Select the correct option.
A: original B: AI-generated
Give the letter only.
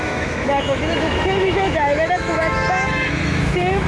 B